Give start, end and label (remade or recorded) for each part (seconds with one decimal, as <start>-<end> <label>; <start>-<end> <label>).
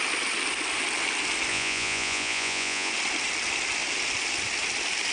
0.0-1.5 recorded; 1.5-2.9 remade; 2.9-5.1 recorded